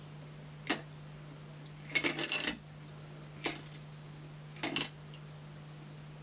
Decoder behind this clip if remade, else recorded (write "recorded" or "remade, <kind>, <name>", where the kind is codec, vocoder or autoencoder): recorded